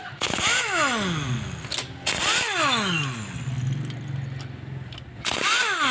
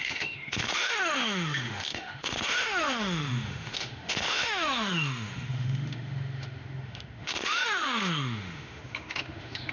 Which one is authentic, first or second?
first